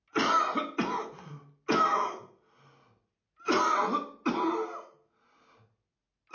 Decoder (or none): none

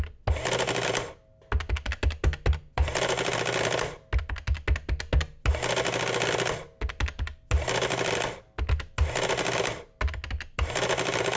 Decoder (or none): none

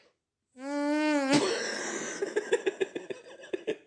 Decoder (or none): none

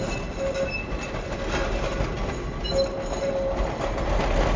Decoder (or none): none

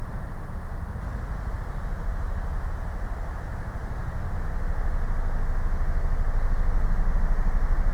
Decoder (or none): none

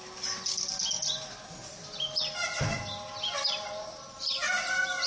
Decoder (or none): none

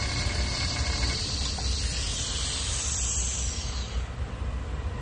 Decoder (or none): none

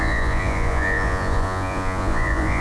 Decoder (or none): vocoder, Vocos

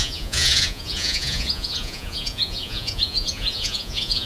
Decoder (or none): vocoder, Vocos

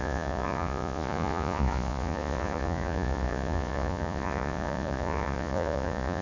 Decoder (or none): vocoder, Vocos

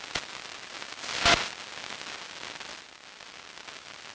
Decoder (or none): none